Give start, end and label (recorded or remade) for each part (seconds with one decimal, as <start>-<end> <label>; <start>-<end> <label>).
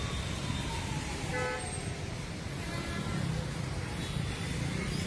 0.0-5.1 recorded